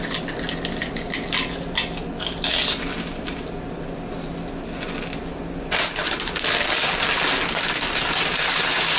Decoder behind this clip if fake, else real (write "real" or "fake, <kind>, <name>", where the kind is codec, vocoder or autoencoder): real